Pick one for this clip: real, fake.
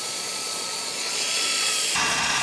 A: fake